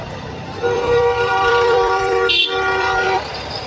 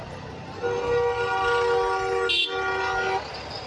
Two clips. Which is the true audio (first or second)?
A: second